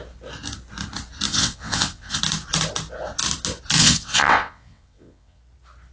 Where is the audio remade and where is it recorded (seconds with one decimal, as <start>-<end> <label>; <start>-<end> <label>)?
0.0-1.3 recorded; 1.3-2.2 remade; 2.2-3.8 recorded; 3.8-5.4 remade; 5.4-5.9 recorded